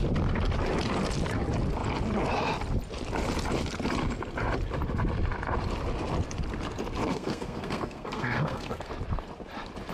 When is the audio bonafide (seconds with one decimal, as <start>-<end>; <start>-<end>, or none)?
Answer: 0.0-7.1; 8.9-9.9